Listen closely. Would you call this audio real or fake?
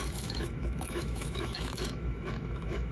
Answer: fake